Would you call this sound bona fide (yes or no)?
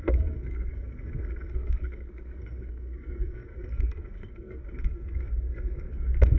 no